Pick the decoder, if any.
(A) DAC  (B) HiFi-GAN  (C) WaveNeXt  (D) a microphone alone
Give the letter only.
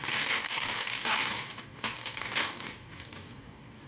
A